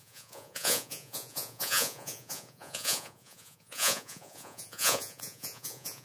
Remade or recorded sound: remade